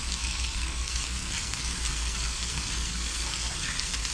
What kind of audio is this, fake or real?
fake